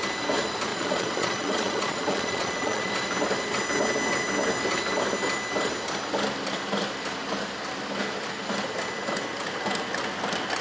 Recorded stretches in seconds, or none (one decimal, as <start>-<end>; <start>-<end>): 0.0-0.7; 2.9-10.6